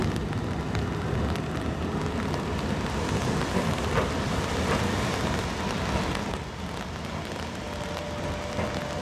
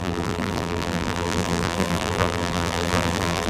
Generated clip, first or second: second